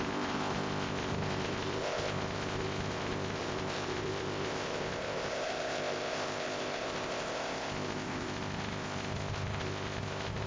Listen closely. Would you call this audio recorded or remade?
remade